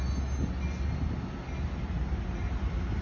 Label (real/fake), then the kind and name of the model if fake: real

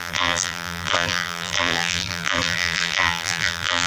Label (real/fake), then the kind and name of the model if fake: fake, vocoder, BigVGAN v2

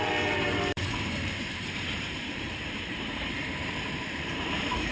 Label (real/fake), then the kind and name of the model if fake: fake, vocoder, BigVGAN v2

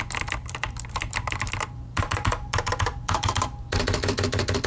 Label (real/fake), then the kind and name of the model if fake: fake, vocoder, BigVGAN v2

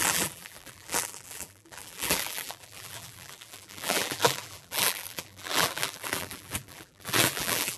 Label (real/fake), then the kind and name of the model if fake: fake, vocoder, BigVGAN v2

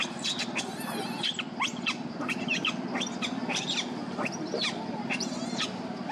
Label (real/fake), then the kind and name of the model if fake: real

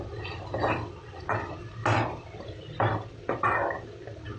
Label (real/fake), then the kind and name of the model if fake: real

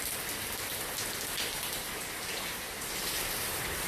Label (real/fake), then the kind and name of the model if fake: real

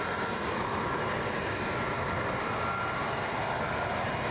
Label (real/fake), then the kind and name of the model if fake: real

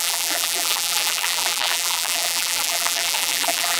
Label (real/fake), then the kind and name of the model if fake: fake, vocoder, BigVGAN v2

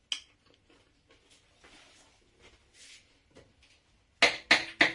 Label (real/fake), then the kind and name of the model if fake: real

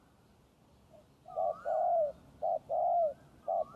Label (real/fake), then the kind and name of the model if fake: real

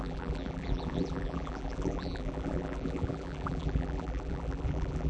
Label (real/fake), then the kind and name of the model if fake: fake, vocoder, BigVGAN v2